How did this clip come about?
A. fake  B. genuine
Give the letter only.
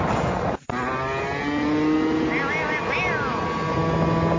B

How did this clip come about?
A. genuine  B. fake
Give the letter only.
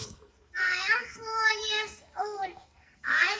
B